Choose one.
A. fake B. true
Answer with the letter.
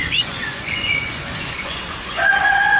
A